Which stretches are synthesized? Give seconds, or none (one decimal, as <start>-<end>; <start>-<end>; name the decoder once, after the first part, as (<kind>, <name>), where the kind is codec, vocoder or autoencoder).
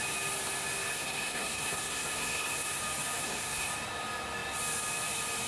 0.9-2.8 (codec, SNAC); 3.2-3.7